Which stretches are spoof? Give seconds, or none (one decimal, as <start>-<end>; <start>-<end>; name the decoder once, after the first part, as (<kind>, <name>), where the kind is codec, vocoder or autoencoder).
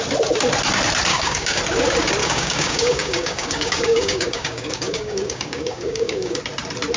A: 1.1-1.6 (codec, DAC); 2.2-6.4